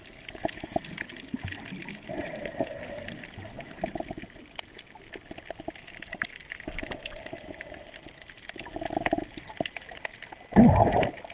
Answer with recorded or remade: recorded